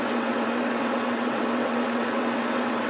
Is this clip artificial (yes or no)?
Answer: yes